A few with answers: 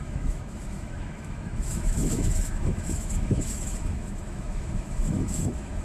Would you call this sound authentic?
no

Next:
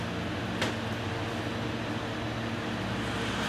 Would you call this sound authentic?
yes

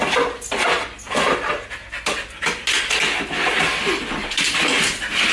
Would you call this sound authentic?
yes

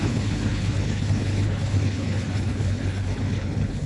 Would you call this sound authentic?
no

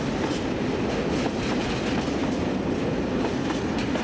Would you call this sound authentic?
yes